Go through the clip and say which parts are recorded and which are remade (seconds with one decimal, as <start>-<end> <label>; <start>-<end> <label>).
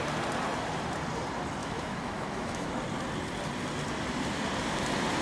0.0-1.6 recorded; 1.6-2.7 remade; 2.7-5.2 recorded